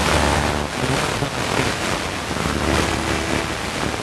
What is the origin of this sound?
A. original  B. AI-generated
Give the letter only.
A